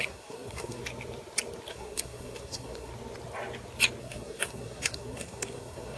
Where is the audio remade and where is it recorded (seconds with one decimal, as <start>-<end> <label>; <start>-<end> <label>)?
0.0-0.8 remade; 0.8-1.7 recorded; 1.7-2.9 remade; 2.9-4.0 recorded; 4.0-6.0 remade